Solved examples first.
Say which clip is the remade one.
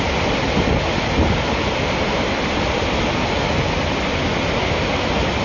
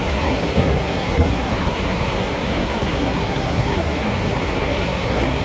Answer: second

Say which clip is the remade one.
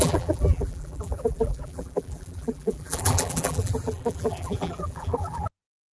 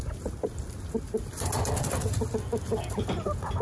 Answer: first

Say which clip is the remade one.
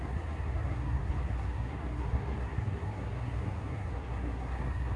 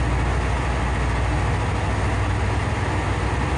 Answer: first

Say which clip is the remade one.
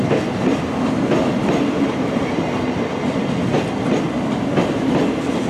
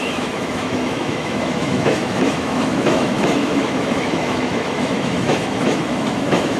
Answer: second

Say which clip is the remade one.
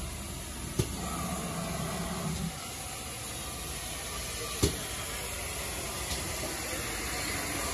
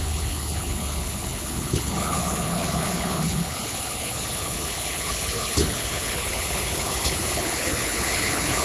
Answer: second